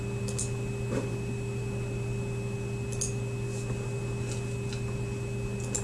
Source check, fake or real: real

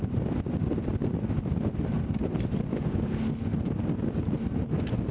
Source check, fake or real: real